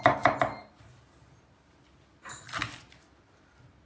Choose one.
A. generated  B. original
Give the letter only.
B